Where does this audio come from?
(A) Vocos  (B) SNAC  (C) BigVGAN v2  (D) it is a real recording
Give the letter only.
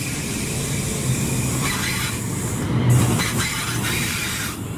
C